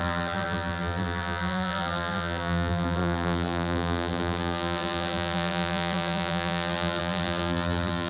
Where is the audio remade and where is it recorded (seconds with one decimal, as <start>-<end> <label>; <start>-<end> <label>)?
0.0-8.1 remade